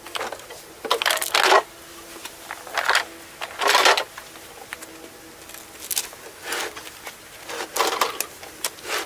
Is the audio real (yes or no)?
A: yes